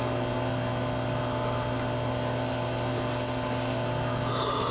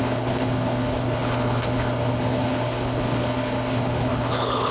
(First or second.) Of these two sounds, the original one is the first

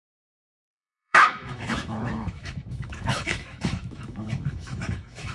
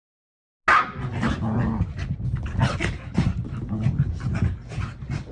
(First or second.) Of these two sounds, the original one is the second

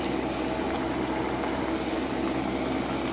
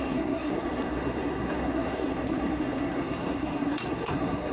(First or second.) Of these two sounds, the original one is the first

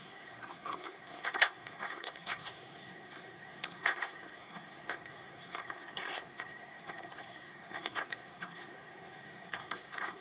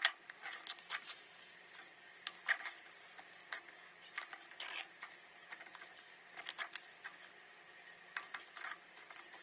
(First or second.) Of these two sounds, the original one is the second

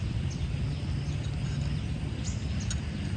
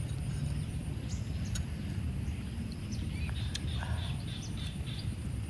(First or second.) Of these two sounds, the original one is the first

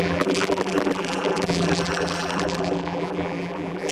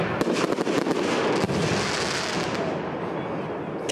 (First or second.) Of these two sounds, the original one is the second